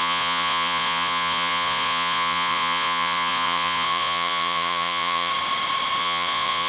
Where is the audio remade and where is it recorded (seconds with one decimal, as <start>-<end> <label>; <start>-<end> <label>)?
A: 0.0-5.3 remade; 5.3-6.0 recorded; 6.0-6.7 remade